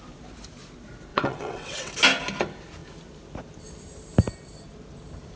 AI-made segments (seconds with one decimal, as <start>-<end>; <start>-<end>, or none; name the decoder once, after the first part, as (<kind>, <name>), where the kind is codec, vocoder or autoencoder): 1.1-1.9 (vocoder, WaveNeXt)